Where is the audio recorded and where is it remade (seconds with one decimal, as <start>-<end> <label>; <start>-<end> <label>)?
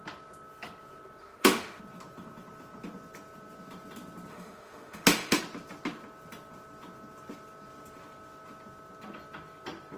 0.0-1.2 recorded; 1.2-1.8 remade; 1.8-4.3 recorded; 4.3-5.4 remade; 5.4-10.0 recorded